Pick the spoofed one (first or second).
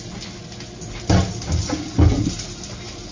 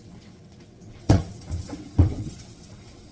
second